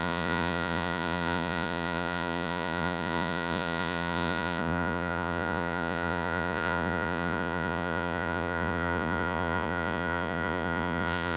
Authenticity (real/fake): fake